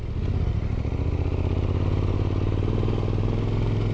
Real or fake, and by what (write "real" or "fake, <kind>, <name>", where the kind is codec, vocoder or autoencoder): real